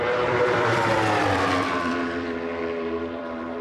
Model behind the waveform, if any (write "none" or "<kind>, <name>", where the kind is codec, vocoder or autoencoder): vocoder, BigVGAN v2